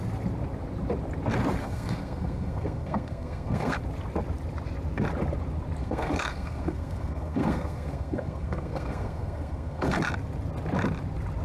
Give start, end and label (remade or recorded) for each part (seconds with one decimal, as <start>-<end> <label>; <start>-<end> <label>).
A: 0.0-1.6 recorded; 1.6-3.8 remade; 3.8-5.8 recorded; 5.8-10.0 remade; 10.0-11.4 recorded